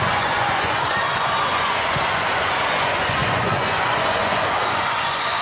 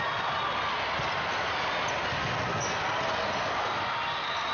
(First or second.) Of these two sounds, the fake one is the first